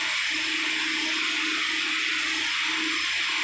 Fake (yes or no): no